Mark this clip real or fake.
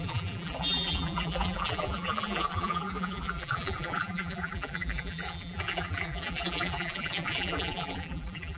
fake